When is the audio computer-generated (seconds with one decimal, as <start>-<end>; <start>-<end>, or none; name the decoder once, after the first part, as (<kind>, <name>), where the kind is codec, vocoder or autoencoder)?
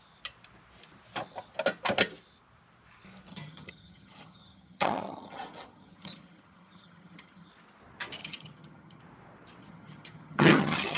3.3-7.5 (vocoder, HiFi-GAN); 8.2-9.0; 9.6-11.0